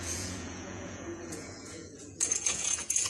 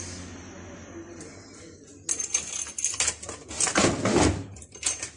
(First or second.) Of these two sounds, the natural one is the second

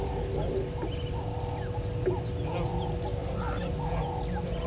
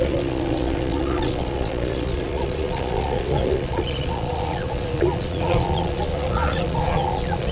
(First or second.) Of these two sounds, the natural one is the first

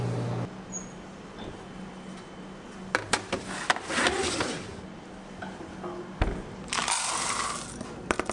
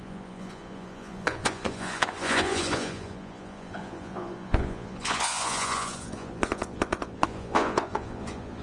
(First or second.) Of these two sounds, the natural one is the first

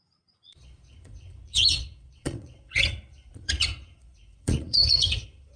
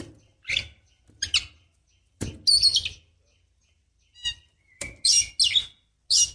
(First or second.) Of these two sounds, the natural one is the second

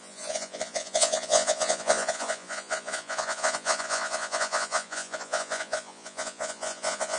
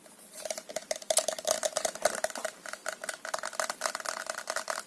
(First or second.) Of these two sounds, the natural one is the second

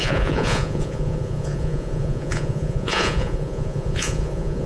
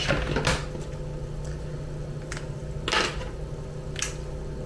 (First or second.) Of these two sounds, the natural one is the second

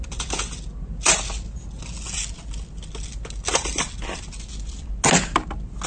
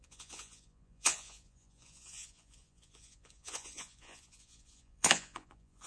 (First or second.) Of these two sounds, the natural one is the first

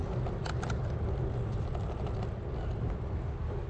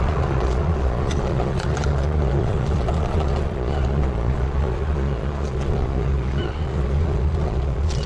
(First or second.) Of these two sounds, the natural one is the first